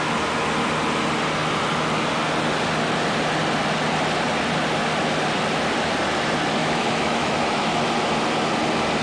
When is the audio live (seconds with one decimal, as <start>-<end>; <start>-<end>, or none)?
0.0-6.6; 7.8-9.0